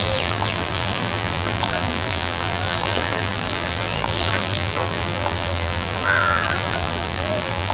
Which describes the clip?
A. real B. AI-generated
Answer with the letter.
B